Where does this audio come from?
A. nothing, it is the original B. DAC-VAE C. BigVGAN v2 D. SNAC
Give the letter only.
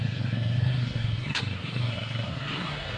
D